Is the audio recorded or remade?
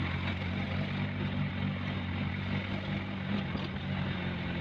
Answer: recorded